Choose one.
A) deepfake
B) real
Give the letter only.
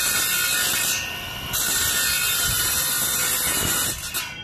B